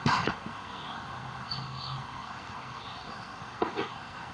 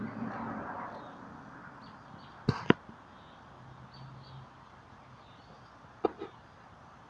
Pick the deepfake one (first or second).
first